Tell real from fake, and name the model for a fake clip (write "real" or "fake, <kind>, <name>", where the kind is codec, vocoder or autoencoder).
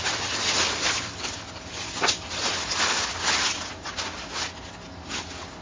real